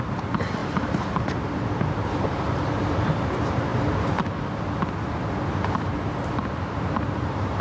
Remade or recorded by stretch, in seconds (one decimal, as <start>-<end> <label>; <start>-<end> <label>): 0.0-3.7 remade; 3.7-5.7 recorded; 5.7-7.6 remade